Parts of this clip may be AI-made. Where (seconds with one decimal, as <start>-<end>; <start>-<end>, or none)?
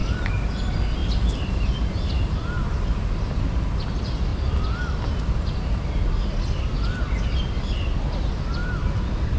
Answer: none